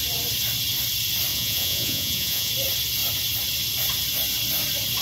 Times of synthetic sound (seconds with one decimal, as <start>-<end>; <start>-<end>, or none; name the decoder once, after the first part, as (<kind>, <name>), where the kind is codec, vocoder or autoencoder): 1.3-2.5 (vocoder, Vocos)

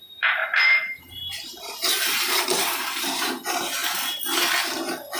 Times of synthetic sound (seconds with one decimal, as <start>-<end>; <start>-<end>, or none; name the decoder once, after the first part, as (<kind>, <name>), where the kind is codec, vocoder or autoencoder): 0.0-3.8 (vocoder, BigVGAN v2)

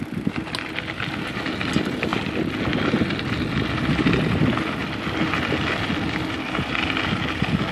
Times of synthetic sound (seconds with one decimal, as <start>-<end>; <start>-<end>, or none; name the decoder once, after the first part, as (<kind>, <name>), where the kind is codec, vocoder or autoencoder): none

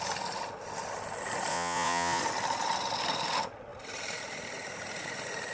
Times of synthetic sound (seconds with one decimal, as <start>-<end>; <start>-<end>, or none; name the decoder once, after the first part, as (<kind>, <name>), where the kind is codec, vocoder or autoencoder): 1.5-2.2 (vocoder, Vocos)

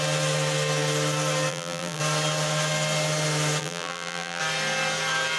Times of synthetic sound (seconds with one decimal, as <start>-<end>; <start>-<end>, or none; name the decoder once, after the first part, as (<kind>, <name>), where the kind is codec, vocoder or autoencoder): 1.5-2.0 (vocoder, BigVGAN v2); 3.6-4.4

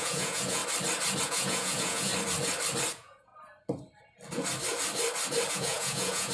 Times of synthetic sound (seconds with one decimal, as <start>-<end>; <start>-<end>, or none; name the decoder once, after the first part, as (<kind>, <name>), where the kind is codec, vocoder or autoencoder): 0.0-0.6 (vocoder, Vocos); 1.2-2.1; 2.9-3.3; 5.5-6.3

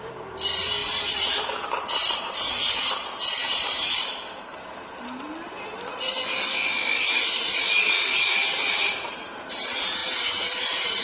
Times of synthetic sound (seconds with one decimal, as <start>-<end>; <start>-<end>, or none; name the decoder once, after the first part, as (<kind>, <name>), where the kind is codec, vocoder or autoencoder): 0.0-5.3 (vocoder, BigVGAN v2); 7.9-11.0